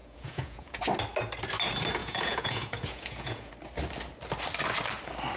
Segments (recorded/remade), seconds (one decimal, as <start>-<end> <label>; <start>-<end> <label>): 0.0-0.8 remade; 0.8-2.0 recorded; 2.0-3.5 remade; 3.5-5.4 recorded